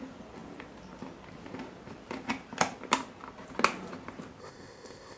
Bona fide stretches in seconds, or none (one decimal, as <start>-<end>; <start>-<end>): 0.0-4.4